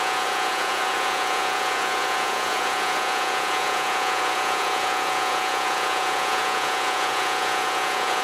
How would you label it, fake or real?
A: fake